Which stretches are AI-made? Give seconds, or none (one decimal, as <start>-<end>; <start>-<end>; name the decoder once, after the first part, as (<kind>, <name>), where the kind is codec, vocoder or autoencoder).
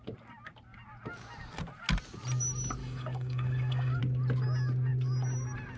2.8-4.0 (codec, DAC)